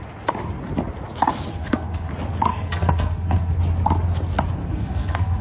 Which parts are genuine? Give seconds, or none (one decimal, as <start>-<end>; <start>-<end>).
0.0-1.5; 2.1-2.5; 3.6-4.6